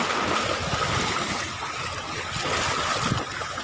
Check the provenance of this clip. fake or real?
real